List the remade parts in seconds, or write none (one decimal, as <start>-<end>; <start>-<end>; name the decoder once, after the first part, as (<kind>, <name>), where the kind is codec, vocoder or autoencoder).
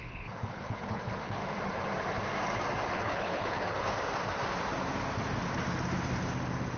0.0-1.4 (codec, HILCodec); 2.9-3.9